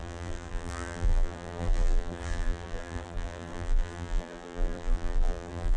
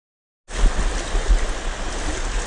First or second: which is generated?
first